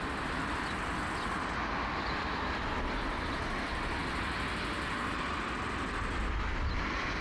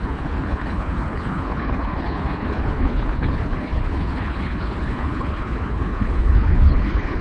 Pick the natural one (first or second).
first